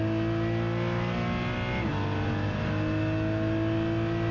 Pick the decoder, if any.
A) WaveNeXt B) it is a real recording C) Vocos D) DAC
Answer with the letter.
B